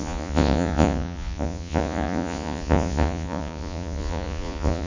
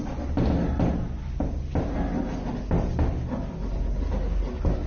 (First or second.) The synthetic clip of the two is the first